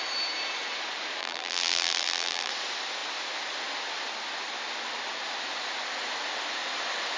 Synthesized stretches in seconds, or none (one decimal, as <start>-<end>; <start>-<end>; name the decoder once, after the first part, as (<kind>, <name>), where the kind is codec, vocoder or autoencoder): 1.2-2.5 (vocoder, BigVGAN v2)